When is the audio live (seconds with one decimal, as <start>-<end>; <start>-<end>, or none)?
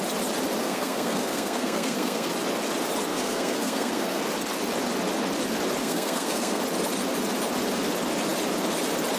0.0-0.6; 2.3-3.1; 4.2-5.8; 6.6-9.2